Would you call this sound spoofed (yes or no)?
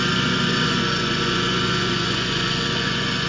yes